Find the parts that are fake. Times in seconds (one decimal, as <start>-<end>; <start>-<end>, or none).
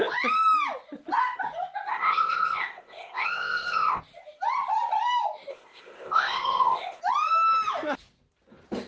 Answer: 1.9-4.0; 5.5-7.0